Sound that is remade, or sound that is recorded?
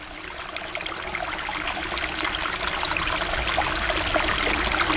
recorded